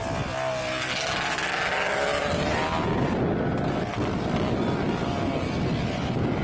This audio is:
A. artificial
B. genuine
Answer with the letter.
B